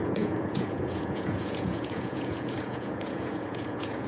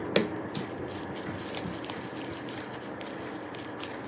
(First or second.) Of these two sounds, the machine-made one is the first